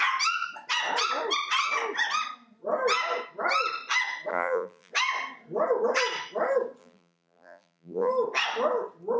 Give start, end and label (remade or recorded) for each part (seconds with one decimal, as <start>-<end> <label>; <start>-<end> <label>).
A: 0.0-4.3 recorded; 4.3-4.9 remade; 4.9-6.8 recorded; 6.8-8.1 remade; 8.1-9.2 recorded